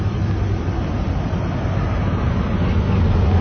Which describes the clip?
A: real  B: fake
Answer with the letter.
A